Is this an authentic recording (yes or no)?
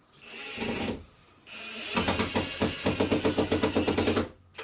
yes